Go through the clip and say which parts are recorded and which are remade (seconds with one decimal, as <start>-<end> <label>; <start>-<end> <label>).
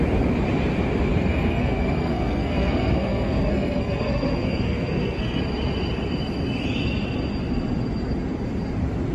0.0-1.1 recorded; 1.1-5.4 remade; 5.4-9.1 recorded